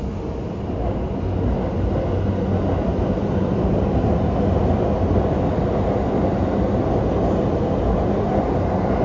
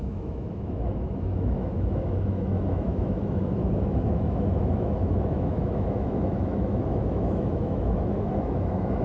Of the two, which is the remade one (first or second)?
second